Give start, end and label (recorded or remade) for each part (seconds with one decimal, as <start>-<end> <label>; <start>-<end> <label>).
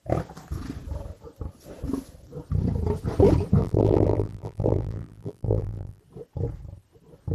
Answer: 0.0-3.6 recorded; 3.6-6.0 remade; 6.0-7.3 recorded